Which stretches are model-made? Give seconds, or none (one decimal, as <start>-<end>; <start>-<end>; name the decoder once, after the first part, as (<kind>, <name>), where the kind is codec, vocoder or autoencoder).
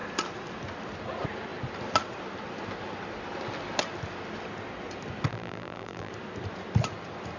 5.3-6.1 (vocoder, BigVGAN v2)